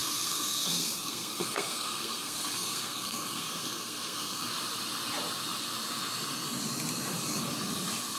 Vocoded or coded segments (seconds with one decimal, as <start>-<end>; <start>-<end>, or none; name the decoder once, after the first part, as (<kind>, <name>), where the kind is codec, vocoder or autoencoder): 0.0-4.5 (codec, SNAC)